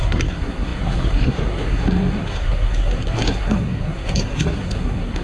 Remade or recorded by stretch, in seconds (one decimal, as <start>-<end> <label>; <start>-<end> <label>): 0.0-5.2 remade

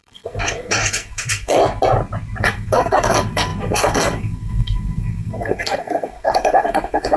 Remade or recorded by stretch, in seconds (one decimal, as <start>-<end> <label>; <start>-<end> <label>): 0.0-1.6 remade; 1.6-2.4 recorded; 2.4-7.2 remade

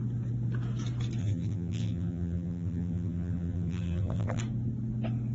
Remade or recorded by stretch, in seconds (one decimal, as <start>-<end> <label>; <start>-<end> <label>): 0.0-1.2 recorded; 1.2-4.4 remade; 4.4-5.3 recorded

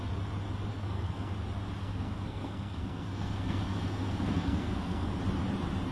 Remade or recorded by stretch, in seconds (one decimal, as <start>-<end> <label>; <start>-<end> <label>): 0.0-0.7 recorded; 0.7-1.3 remade; 1.3-1.8 recorded; 1.8-5.2 remade; 5.2-5.9 recorded

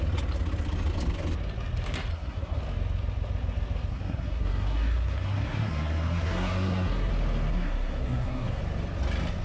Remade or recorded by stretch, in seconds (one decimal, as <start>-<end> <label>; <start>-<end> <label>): 0.0-2.1 recorded; 2.1-2.6 remade; 2.6-3.9 recorded; 3.9-7.1 remade; 7.1-7.5 recorded; 7.5-8.6 remade; 8.6-9.4 recorded

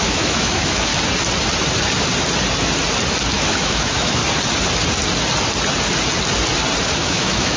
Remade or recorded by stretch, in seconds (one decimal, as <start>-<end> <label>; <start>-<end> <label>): 0.0-0.9 remade; 0.9-3.3 recorded; 3.3-4.2 remade; 4.2-6.8 recorded; 6.8-7.6 remade